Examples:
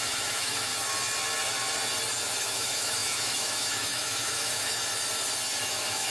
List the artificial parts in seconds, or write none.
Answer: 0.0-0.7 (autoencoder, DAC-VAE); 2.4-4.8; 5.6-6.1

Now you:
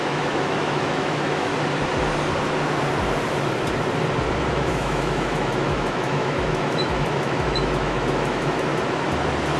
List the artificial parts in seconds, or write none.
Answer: 0.0-1.5 (autoencoder, DAC-VAE); 4.5-8.7

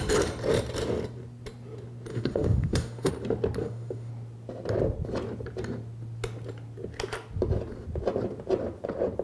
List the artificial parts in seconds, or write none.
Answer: 2.1-3.1 (autoencoder, DAC-VAE); 3.6-4.1

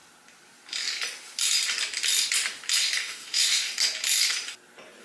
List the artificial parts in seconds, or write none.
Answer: 3.0-3.7 (autoencoder, DAC-VAE)

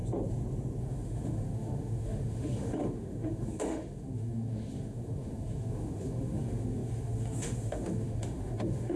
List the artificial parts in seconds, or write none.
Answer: 0.8-9.0 (autoencoder, DAC-VAE)

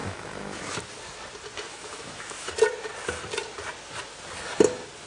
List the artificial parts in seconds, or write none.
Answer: 0.0-0.8 (autoencoder, DAC-VAE); 1.7-2.5